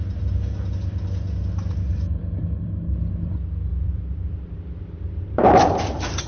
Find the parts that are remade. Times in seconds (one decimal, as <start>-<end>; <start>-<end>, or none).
1.9-2.7; 3.7-6.3